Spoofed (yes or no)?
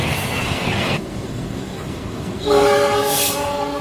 yes